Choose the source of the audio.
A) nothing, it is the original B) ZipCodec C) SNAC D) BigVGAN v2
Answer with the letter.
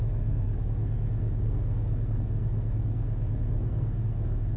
C